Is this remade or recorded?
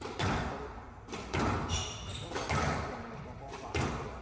recorded